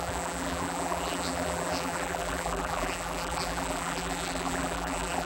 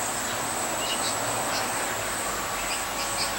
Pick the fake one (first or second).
first